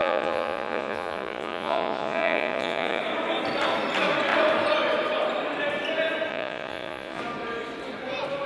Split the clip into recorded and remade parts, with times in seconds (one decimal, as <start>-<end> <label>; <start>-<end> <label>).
0.0-3.0 remade; 3.0-6.3 recorded; 6.3-7.2 remade; 7.2-8.5 recorded